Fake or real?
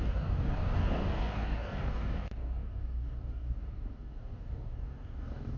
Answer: fake